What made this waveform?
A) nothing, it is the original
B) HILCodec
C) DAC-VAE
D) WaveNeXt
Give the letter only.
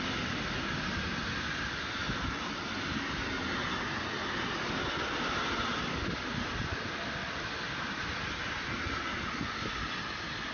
A